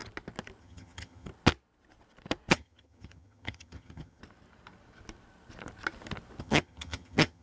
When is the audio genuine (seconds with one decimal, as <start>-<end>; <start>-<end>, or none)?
0.0-0.6; 1.3-2.5; 4.2-6.4